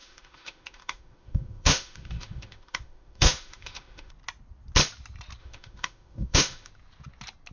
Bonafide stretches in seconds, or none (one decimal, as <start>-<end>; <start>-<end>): 4.1-5.4; 6.7-7.5